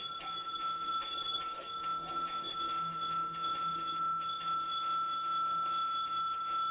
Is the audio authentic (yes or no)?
no